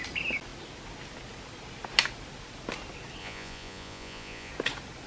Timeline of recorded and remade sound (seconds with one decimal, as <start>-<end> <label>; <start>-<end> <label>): 0.0-3.2 recorded; 3.2-4.5 remade; 4.5-5.1 recorded